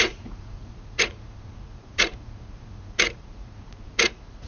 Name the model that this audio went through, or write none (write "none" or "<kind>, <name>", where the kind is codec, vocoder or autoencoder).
vocoder, Vocos